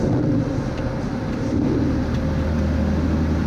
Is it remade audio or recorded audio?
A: recorded